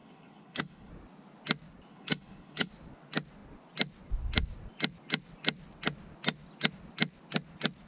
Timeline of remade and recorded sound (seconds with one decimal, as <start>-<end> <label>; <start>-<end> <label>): 0.0-0.9 remade; 0.9-1.9 recorded; 1.9-2.7 remade; 2.7-7.9 recorded